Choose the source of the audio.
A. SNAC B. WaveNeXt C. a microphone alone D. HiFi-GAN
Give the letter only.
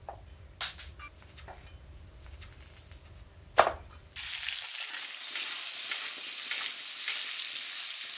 C